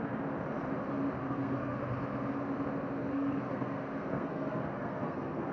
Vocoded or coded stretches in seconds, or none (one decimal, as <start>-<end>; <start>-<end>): 1.2-1.8; 3.0-5.5